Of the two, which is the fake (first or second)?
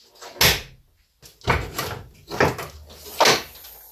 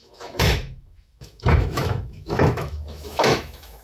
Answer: second